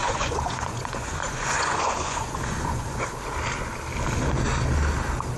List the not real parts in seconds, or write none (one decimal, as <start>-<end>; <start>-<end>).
0.0-3.1